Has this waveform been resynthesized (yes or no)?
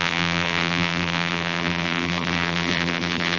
yes